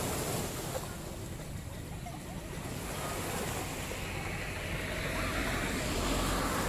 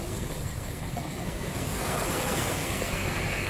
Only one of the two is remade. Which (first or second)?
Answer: second